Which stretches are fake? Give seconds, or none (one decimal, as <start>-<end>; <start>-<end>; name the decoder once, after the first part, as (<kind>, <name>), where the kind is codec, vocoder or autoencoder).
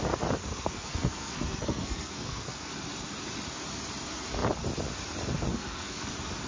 0.4-2.7 (codec, SNAC); 5.5-6.1